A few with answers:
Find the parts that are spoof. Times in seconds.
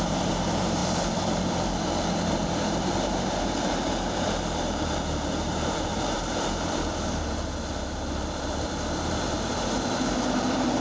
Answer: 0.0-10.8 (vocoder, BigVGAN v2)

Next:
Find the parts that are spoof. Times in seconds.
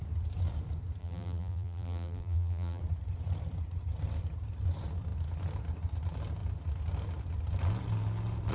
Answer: 1.0-2.8 (vocoder, BigVGAN v2)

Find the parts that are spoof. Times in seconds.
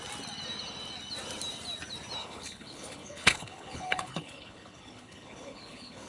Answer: 2.2-6.1 (codec, HILCodec)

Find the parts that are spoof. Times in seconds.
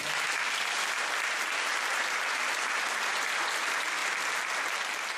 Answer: none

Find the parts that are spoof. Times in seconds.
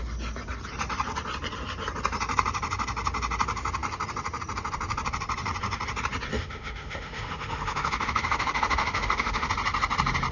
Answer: 6.3-9.5 (autoencoder, DAC-VAE)